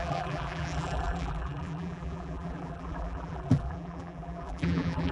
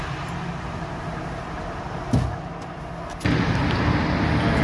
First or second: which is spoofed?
first